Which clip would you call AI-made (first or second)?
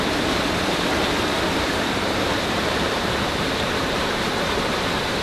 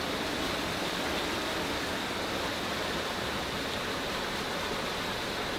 first